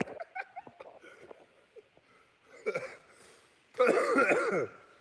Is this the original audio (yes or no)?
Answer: yes